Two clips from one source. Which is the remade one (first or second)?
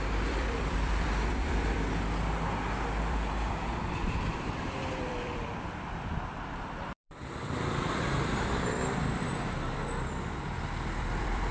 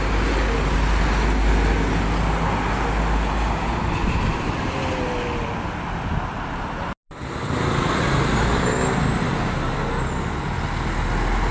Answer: first